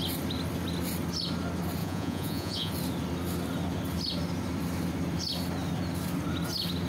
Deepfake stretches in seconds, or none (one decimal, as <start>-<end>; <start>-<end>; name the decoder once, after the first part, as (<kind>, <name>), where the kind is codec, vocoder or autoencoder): 1.8-2.7 (vocoder, Vocos)